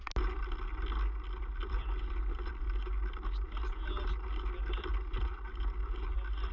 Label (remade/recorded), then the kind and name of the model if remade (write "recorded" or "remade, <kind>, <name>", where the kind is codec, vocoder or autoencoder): recorded